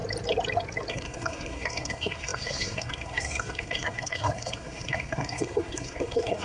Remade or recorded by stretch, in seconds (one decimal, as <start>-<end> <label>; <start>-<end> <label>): 0.0-0.9 recorded; 0.9-6.4 remade